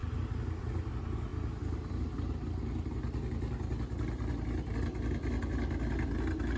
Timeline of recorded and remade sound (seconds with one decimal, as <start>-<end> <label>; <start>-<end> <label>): 0.0-0.9 remade; 0.9-6.6 recorded